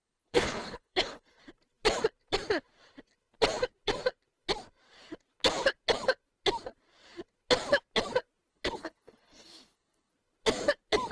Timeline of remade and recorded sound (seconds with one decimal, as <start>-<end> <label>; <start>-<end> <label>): 0.0-1.4 remade; 1.4-8.5 recorded; 8.5-10.1 remade; 10.1-11.1 recorded